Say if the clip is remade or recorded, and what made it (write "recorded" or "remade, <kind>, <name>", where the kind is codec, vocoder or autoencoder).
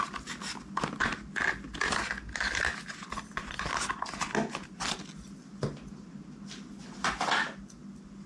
recorded